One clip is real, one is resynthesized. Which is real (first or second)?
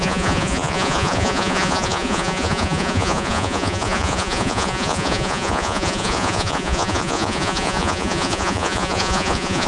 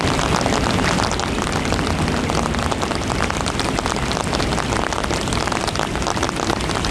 second